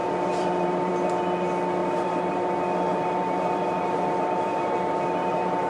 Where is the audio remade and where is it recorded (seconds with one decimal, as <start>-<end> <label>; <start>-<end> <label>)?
0.0-0.9 remade; 0.9-1.8 recorded; 1.8-2.5 remade; 2.5-2.9 recorded; 2.9-5.7 remade